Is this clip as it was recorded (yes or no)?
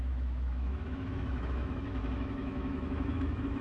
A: no